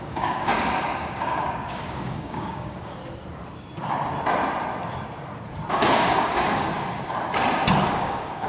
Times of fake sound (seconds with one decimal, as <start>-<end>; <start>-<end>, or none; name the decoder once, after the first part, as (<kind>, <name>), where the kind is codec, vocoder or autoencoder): 0.0-3.0 (codec, DAC); 5.7-6.7; 7.9-8.5

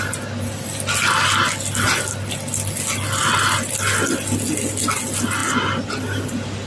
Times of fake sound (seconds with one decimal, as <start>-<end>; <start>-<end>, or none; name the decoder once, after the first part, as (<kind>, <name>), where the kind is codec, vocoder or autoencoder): none

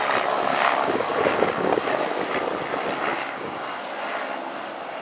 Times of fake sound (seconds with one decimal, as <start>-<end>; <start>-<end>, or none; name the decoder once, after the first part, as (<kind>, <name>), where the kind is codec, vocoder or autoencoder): 0.5-2.2 (codec, DAC); 3.1-3.8

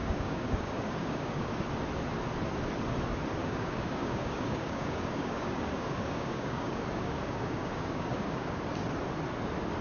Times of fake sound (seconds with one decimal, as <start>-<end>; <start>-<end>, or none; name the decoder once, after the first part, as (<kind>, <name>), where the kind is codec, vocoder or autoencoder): 0.0-1.7 (codec, DAC); 3.4-8.6

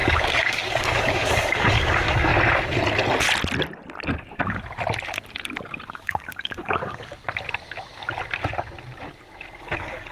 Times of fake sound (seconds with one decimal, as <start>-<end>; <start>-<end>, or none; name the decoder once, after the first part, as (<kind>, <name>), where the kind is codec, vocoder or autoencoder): 0.0-2.3 (codec, DAC); 5.9-7.1; 9.6-10.1

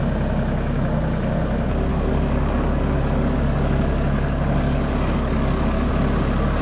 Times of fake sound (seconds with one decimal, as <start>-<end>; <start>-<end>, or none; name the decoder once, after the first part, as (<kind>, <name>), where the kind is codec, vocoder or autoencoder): 1.9-5.9 (codec, DAC)

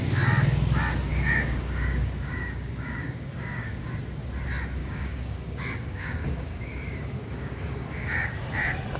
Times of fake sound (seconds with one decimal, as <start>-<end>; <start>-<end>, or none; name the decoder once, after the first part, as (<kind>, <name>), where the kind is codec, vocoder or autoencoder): 1.1-3.9 (codec, DAC); 4.8-8.4